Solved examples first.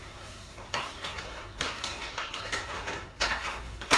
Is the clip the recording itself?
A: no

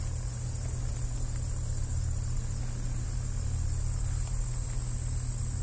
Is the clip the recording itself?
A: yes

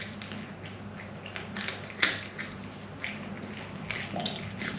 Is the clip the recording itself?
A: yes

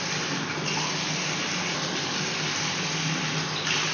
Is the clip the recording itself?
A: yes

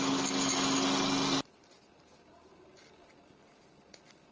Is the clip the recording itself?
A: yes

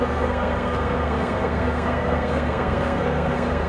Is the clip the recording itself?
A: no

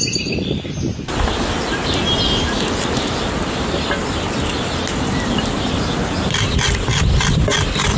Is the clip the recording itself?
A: yes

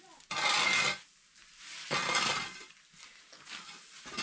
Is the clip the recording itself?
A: yes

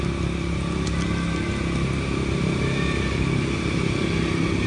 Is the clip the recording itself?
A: yes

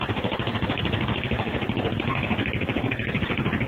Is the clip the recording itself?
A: no